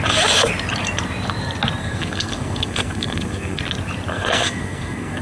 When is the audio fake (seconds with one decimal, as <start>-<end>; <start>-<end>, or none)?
1.8-3.6; 4.1-5.2